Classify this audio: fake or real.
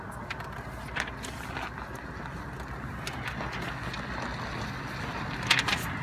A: real